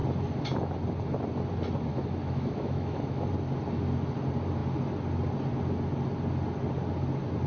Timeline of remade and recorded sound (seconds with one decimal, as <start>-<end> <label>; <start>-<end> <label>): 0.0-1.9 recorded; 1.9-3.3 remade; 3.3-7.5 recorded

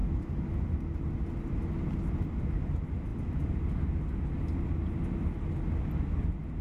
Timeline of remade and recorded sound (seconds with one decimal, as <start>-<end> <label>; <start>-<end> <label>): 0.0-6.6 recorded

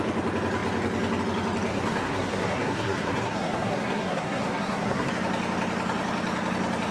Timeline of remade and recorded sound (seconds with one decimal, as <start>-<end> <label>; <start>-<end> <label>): 0.0-1.7 recorded; 1.7-5.1 remade; 5.1-6.9 recorded

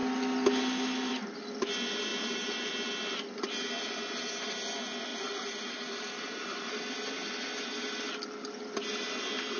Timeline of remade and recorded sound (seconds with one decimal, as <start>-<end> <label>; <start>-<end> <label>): 0.0-2.1 recorded; 2.1-2.7 remade; 2.7-5.1 recorded; 5.1-6.8 remade; 6.8-9.6 recorded

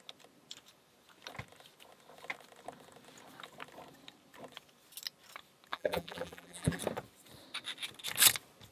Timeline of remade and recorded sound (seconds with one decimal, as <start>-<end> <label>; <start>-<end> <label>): 0.0-5.7 recorded; 5.7-6.8 remade; 6.8-8.7 recorded